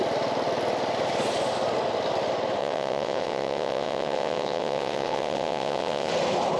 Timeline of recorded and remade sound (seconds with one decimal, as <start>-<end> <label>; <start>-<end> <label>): 0.0-2.6 recorded; 2.6-6.1 remade; 6.1-6.6 recorded